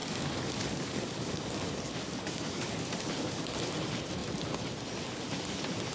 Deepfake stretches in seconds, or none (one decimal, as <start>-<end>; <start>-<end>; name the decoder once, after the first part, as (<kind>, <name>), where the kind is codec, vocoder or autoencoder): 0.0-3.5 (codec, DAC)